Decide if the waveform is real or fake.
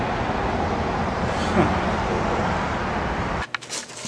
real